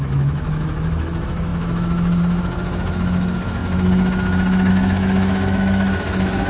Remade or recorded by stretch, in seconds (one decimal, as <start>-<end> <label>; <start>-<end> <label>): 0.0-6.5 remade